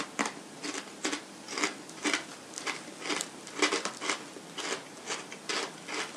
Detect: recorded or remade recorded